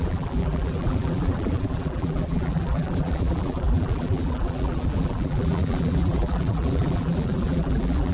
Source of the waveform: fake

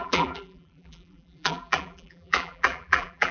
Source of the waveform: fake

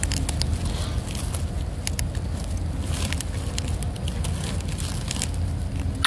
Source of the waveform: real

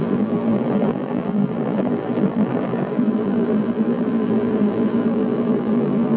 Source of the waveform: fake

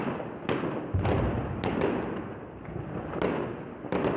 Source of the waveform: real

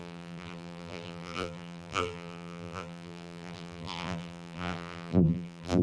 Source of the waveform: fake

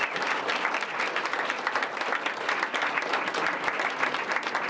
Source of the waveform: real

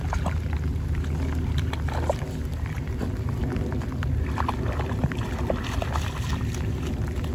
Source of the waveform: real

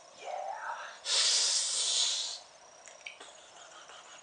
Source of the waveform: real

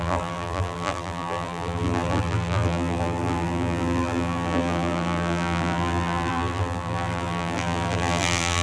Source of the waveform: fake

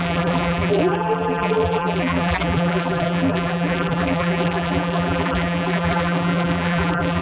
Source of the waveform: fake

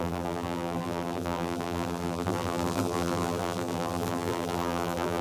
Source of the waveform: fake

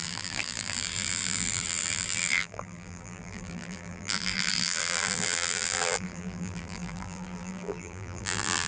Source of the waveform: fake